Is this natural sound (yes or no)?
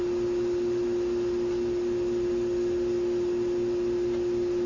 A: yes